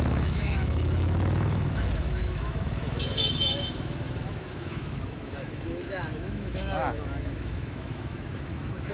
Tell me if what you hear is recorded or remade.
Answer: remade